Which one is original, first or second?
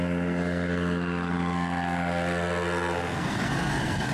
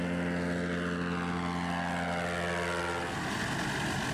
second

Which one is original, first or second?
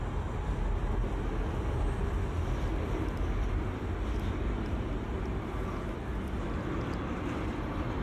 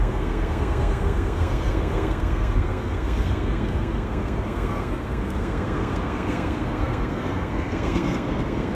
first